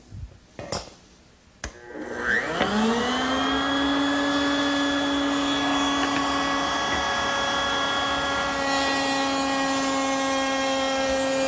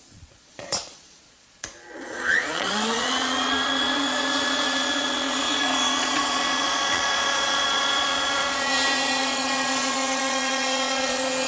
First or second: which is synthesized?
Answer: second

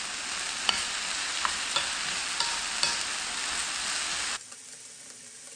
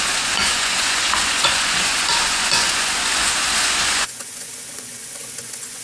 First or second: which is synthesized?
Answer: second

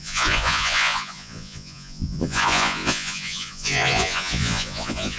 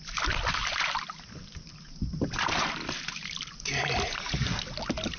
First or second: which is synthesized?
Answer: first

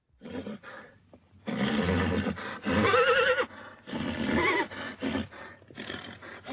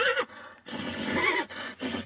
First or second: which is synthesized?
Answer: second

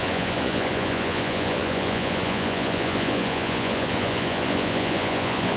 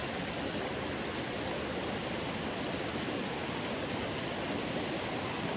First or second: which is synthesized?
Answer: first